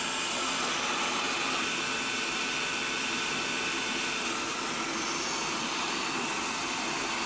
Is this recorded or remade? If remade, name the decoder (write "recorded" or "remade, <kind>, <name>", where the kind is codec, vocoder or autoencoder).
recorded